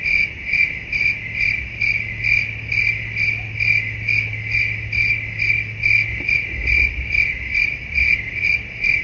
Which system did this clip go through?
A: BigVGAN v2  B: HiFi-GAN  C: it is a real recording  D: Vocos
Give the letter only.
C